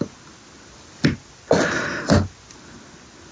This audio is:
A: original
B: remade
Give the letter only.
A